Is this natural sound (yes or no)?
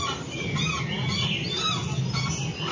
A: yes